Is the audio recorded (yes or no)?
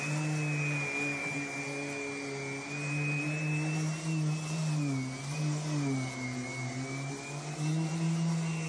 yes